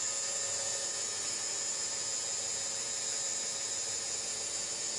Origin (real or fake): real